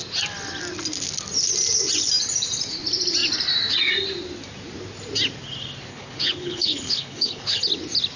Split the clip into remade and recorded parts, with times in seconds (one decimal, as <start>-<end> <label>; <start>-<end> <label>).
0.0-5.9 recorded; 5.9-7.6 remade; 7.6-8.2 recorded